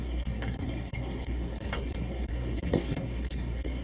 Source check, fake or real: fake